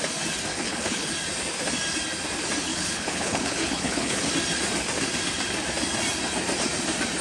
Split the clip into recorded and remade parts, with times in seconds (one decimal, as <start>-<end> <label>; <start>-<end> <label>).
0.0-0.5 recorded; 0.5-1.1 remade; 1.1-2.7 recorded; 2.7-4.3 remade; 4.3-7.2 recorded